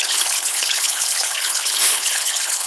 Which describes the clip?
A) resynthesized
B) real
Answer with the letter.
A